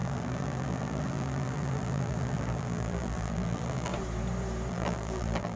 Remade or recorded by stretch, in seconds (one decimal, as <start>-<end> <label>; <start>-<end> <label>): 0.0-3.9 remade; 3.9-4.7 recorded; 4.7-5.6 remade